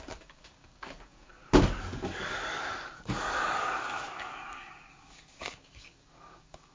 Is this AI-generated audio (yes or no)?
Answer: yes